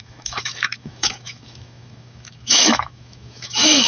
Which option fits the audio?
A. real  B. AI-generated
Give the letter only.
B